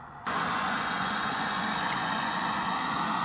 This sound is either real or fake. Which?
fake